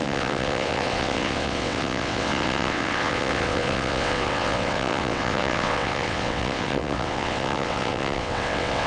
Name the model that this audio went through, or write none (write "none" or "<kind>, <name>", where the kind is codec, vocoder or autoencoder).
vocoder, WaveNeXt